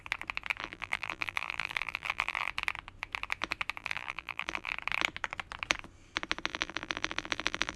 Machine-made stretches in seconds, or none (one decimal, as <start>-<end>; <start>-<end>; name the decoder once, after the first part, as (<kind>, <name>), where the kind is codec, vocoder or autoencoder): 0.6-2.5 (vocoder, BigVGAN v2); 3.8-4.7; 6.5-7.8

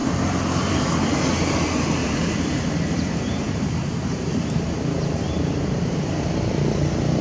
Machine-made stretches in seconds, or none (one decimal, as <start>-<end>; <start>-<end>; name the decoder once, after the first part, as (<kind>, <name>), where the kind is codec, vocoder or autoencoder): 2.0-6.3 (vocoder, BigVGAN v2)

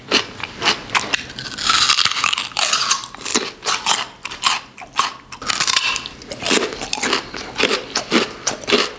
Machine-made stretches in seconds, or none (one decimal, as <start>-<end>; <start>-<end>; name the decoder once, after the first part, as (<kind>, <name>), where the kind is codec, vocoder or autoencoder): none